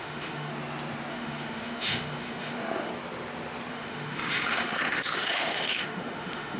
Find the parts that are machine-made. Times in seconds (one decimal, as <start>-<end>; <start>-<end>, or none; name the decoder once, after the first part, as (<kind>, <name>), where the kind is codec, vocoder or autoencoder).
0.0-0.5 (autoencoder, DAC-VAE); 1.1-2.9; 3.7-6.6